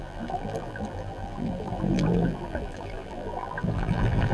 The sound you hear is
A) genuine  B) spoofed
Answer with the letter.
B